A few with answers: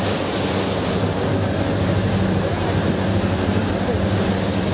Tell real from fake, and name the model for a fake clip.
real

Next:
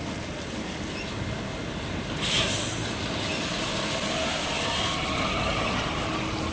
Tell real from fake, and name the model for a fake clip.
real